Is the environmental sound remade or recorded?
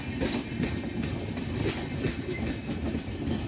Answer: recorded